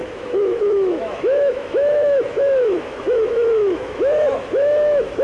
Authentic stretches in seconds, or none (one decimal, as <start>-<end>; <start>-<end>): none